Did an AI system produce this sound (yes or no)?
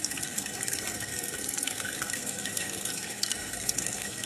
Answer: yes